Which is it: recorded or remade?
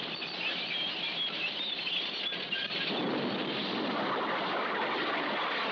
recorded